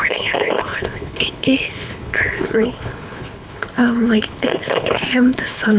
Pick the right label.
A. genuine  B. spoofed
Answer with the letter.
B